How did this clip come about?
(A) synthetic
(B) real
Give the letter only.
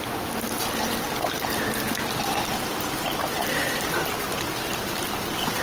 A